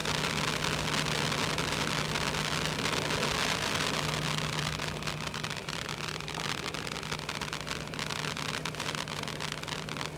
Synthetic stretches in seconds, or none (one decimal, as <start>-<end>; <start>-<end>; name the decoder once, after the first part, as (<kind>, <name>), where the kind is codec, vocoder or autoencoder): 5.6-7.0 (vocoder, BigVGAN v2)

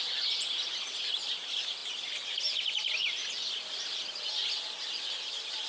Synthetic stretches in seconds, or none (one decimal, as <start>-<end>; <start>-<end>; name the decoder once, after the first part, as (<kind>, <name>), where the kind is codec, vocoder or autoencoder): none

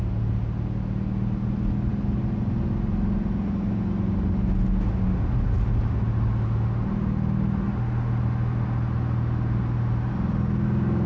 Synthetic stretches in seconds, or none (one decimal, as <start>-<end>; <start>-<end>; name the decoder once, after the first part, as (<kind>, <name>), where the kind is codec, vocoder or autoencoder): none

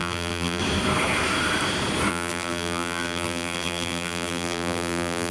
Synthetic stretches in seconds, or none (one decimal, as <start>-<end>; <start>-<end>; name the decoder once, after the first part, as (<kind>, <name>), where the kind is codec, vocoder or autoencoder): 0.0-0.6 (vocoder, BigVGAN v2); 2.1-5.3

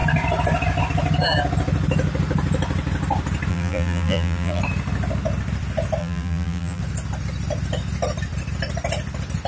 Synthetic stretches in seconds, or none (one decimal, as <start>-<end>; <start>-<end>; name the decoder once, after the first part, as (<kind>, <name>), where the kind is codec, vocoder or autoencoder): 3.5-4.6 (vocoder, BigVGAN v2); 6.0-6.8

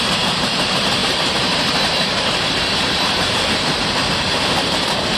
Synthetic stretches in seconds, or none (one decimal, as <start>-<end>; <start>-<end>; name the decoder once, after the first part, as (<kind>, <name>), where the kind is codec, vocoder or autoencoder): 0.0-5.2 (vocoder, BigVGAN v2)